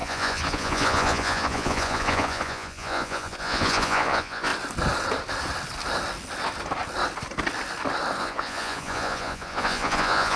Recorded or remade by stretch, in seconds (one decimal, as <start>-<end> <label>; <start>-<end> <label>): 0.0-4.5 remade; 4.5-8.2 recorded; 8.2-10.4 remade